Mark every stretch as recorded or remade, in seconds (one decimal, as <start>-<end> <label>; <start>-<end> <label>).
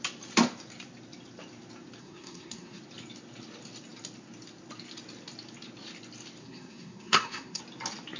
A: 0.0-2.0 recorded; 2.0-2.8 remade; 2.8-6.4 recorded; 6.4-7.6 remade; 7.6-8.2 recorded